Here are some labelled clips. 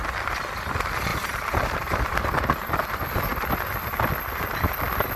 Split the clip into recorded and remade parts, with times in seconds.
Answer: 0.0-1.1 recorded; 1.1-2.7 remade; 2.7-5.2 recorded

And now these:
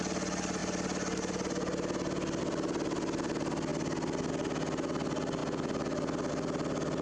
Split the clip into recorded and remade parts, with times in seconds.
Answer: 0.0-7.0 recorded

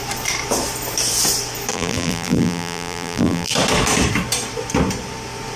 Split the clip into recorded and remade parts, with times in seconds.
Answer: 0.0-1.7 recorded; 1.7-3.5 remade; 3.5-5.6 recorded

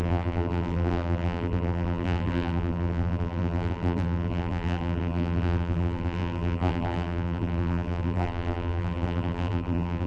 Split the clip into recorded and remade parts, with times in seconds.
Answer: 0.0-10.1 remade

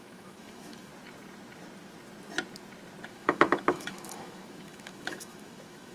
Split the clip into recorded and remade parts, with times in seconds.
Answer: 0.0-0.9 remade; 0.9-3.1 recorded; 3.1-5.9 remade